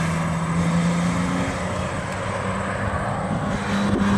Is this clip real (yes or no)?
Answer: yes